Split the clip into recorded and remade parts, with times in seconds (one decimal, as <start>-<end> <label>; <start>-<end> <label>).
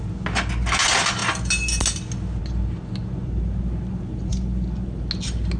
0.0-5.6 recorded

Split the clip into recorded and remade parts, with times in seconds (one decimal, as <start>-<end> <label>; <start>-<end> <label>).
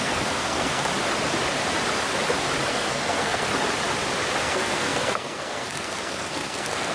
0.0-0.9 remade; 0.9-2.7 recorded; 2.7-3.5 remade; 3.5-4.4 recorded; 4.4-6.9 remade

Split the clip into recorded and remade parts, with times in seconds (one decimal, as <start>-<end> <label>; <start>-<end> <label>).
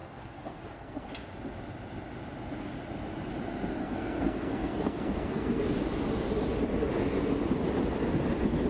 0.0-1.1 remade; 1.1-3.8 recorded; 3.8-5.6 remade; 5.6-8.7 recorded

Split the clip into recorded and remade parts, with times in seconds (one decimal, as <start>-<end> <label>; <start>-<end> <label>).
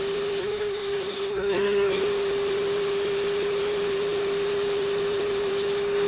0.0-0.4 recorded; 0.4-2.0 remade; 2.0-6.1 recorded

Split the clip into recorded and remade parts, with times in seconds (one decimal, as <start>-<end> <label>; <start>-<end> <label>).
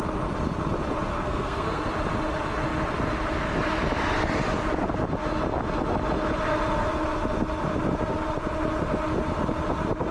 0.0-1.1 recorded; 1.1-1.8 remade; 1.8-10.1 recorded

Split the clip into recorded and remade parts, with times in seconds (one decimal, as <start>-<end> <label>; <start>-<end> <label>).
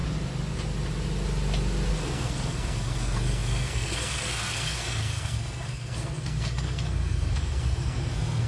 0.0-1.9 recorded; 1.9-8.5 remade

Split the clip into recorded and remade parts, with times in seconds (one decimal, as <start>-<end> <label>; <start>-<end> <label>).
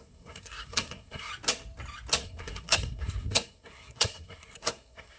0.0-1.3 remade; 1.3-2.2 recorded; 2.2-5.2 remade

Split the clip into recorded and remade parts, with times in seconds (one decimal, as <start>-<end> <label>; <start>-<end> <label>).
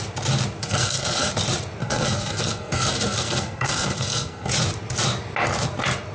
0.0-0.6 recorded; 0.6-1.3 remade; 1.3-1.8 recorded; 1.8-4.5 remade; 4.5-6.1 recorded